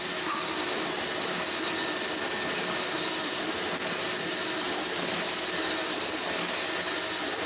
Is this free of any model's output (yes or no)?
yes